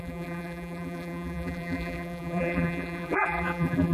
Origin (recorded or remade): remade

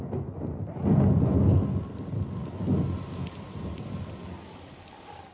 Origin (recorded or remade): recorded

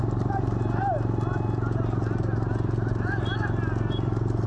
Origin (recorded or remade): recorded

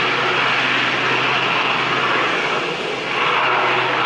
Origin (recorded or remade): recorded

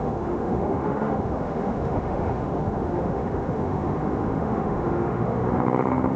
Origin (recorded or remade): remade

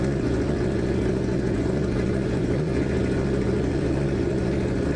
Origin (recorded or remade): remade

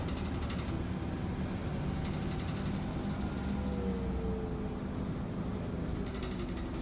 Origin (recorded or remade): recorded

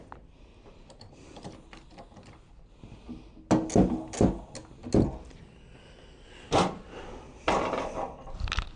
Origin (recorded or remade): recorded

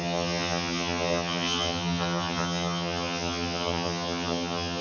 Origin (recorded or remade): remade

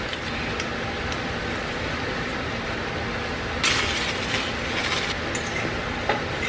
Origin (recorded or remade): recorded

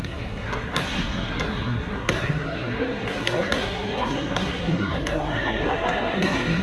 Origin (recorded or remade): remade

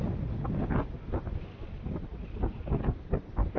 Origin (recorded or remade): recorded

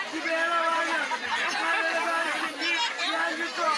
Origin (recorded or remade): recorded